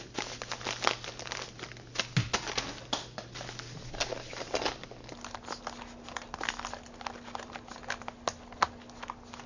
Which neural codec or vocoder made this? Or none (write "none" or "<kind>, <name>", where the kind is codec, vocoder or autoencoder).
none